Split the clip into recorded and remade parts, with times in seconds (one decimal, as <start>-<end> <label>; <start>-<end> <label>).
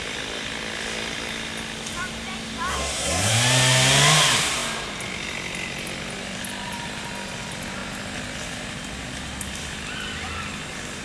0.0-2.7 recorded; 2.7-3.3 remade; 3.3-11.0 recorded